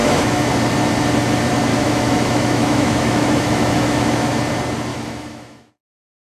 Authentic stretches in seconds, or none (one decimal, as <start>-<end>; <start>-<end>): 0.5-1.7; 4.4-4.9; 5.7-6.3